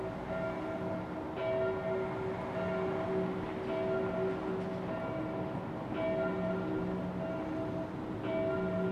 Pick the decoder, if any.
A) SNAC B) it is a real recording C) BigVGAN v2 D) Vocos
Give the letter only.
B